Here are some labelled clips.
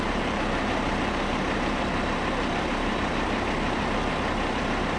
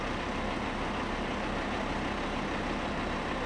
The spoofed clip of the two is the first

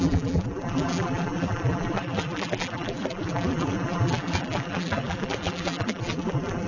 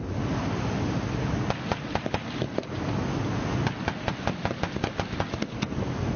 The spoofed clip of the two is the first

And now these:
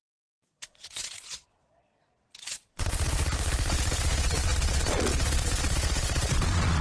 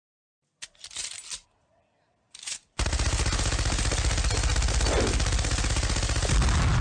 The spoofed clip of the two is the first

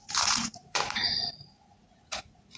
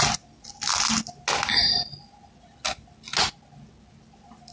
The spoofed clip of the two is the first